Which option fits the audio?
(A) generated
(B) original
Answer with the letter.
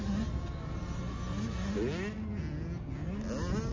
B